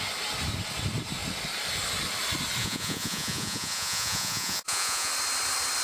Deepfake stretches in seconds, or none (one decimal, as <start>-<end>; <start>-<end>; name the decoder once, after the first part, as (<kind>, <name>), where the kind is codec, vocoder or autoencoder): 2.6-5.1 (vocoder, Vocos)